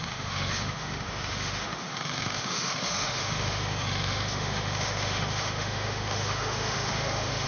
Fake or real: fake